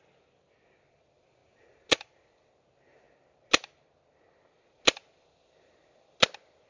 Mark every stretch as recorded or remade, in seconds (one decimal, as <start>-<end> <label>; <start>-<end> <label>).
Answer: 0.0-6.7 recorded